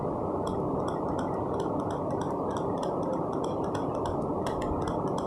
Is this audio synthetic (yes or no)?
no